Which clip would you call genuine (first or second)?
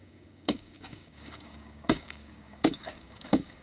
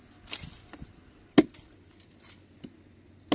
second